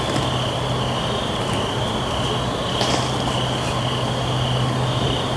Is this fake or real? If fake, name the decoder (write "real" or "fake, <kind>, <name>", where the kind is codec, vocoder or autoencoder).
real